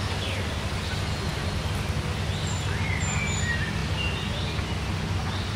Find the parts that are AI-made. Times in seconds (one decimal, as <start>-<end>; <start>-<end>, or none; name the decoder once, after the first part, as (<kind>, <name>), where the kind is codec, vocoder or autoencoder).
3.8-4.6 (vocoder, BigVGAN v2)